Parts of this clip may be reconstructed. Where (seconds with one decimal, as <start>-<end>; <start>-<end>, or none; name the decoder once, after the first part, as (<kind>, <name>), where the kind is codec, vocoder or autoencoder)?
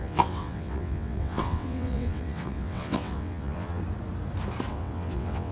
0.0-3.8 (vocoder, WaveNeXt); 4.7-5.5